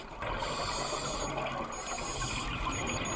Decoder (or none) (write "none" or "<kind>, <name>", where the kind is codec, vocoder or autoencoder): none